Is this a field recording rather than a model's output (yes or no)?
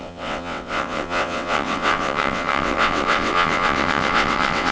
no